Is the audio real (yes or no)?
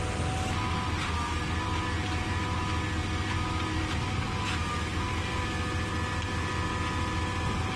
yes